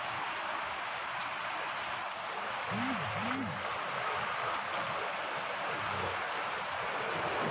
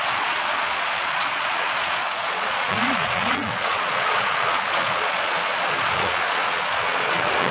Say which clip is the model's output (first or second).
second